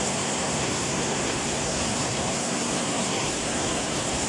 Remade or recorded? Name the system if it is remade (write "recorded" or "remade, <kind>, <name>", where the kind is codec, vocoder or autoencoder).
remade, codec, SNAC